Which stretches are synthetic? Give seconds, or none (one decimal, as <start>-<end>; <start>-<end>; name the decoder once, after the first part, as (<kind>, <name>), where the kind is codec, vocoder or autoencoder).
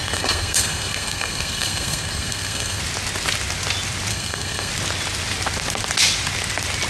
0.0-2.8 (codec, SNAC); 4.1-4.7